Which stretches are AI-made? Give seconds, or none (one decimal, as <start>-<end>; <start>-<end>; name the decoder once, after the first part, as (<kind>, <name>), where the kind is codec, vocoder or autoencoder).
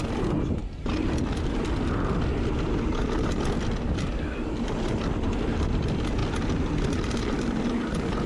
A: none